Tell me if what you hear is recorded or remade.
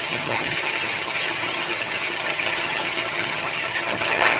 remade